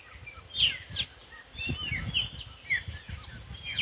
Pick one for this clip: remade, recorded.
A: recorded